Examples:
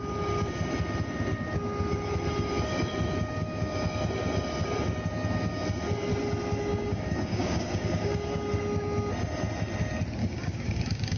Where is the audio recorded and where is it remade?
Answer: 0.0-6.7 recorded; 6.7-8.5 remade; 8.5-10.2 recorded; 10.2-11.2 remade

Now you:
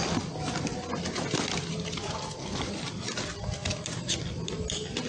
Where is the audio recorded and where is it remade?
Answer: 0.0-5.1 recorded